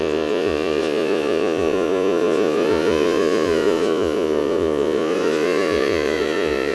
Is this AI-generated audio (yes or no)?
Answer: yes